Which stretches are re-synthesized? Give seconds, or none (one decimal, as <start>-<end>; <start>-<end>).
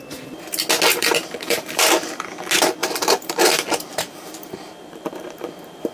0.9-2.3; 2.8-5.9